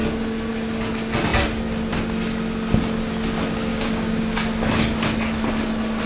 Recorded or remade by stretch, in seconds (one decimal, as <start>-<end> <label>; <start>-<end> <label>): 0.0-3.7 recorded; 3.7-4.4 remade; 4.4-6.1 recorded